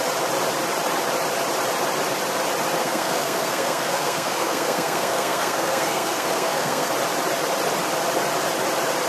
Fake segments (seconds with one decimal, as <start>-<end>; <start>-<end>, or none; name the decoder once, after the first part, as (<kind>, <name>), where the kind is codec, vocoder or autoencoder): 2.8-6.9 (codec, SNAC)